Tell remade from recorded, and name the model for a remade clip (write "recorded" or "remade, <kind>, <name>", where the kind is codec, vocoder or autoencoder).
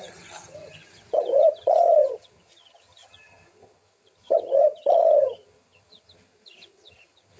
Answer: remade, vocoder, HiFi-GAN